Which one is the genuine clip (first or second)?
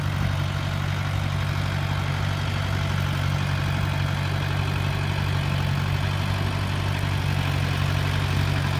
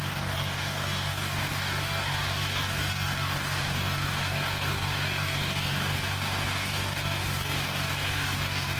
first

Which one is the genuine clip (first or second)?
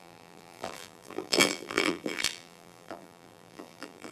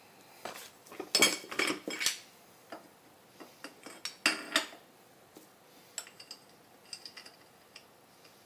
second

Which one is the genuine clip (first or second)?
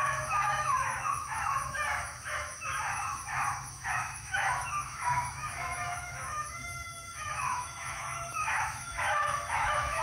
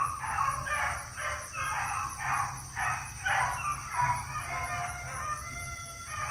second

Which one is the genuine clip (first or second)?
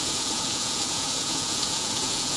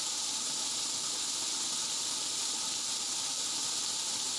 second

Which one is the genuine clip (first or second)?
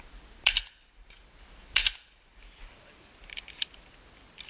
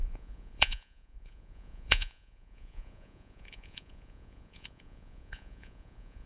first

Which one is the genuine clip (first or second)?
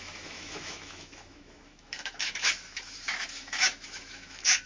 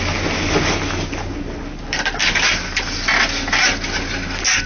second